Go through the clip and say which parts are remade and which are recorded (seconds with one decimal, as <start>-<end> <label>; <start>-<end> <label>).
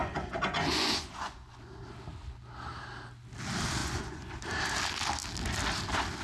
0.0-1.6 remade; 1.6-3.8 recorded; 3.8-4.4 remade; 4.4-6.2 recorded